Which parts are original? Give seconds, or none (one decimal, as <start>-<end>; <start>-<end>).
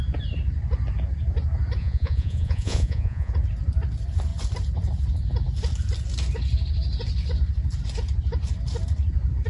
0.0-1.8; 3.3-9.5